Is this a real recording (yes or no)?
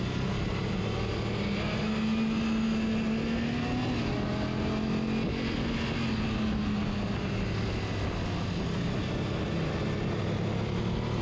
yes